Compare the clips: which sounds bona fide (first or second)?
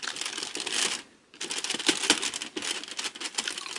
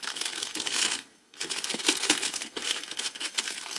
first